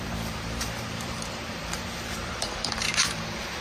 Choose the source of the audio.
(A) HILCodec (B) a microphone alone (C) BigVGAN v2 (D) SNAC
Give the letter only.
C